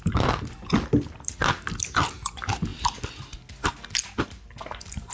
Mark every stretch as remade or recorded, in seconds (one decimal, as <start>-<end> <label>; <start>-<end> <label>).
0.0-5.1 recorded